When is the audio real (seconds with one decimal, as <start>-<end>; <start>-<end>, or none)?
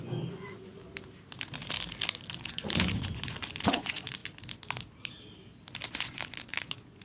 0.8-2.4; 4.2-5.9